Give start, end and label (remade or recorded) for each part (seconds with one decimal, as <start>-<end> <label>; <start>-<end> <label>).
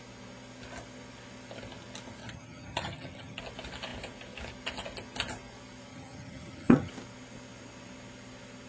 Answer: 0.0-2.2 recorded; 2.2-3.4 remade; 3.4-5.9 recorded; 5.9-6.9 remade; 6.9-8.7 recorded